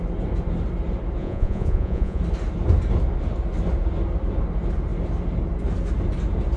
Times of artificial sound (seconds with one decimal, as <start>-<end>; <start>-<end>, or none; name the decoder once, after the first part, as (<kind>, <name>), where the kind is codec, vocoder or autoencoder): 1.2-2.2 (vocoder, Vocos)